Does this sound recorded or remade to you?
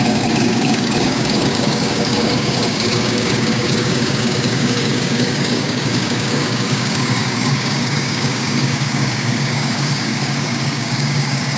remade